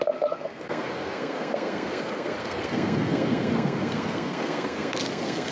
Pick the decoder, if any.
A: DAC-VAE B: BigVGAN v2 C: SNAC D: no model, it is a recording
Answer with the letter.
C